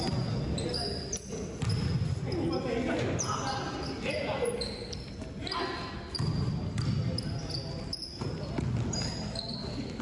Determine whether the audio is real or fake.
real